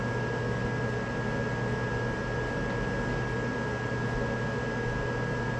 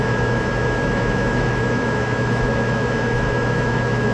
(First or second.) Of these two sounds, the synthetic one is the second